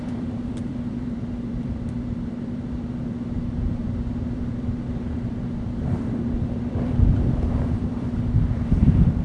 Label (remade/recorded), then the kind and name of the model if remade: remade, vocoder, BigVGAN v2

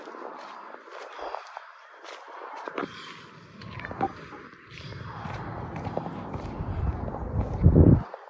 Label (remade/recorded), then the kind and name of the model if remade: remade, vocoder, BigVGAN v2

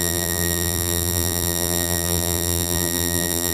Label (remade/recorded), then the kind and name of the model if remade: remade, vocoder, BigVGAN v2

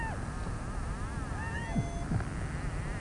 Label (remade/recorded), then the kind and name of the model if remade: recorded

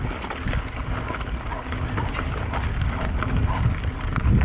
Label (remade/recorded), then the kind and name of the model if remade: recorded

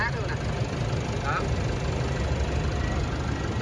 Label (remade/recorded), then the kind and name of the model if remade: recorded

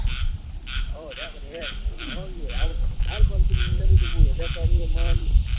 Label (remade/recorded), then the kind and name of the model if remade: remade, vocoder, BigVGAN v2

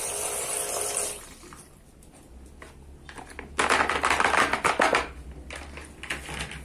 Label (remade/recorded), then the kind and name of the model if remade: recorded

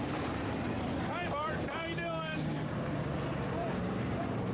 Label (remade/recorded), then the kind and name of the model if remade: remade, vocoder, BigVGAN v2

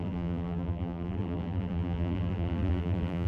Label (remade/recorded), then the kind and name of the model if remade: remade, vocoder, BigVGAN v2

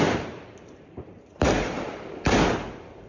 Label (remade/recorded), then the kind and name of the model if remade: remade, vocoder, BigVGAN v2